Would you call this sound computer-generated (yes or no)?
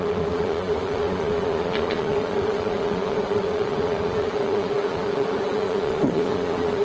yes